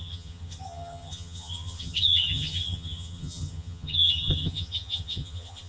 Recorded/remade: remade